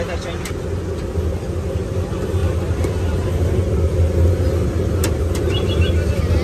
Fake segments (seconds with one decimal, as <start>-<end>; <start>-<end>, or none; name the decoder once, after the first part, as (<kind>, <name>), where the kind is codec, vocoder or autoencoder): none